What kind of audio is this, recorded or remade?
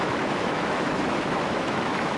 remade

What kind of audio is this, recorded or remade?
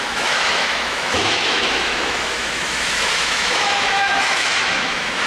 remade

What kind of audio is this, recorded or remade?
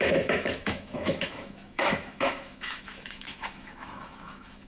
remade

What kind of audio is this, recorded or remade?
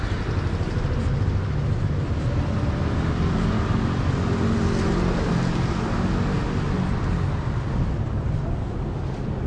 recorded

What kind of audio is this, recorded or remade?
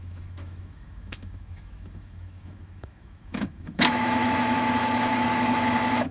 remade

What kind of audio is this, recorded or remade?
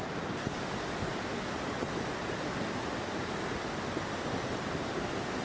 recorded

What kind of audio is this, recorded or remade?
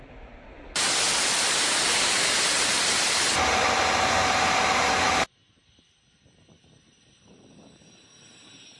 recorded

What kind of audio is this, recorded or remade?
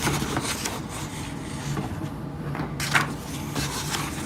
recorded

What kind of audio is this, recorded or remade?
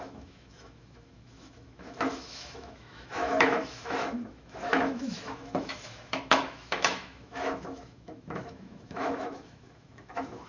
remade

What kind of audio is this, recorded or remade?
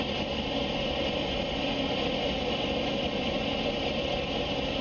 recorded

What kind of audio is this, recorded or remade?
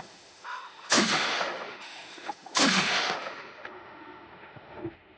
remade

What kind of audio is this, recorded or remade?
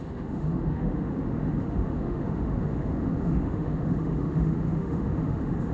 remade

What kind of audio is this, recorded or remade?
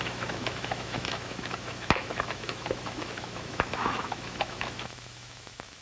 remade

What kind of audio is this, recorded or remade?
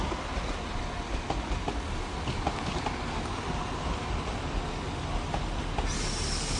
recorded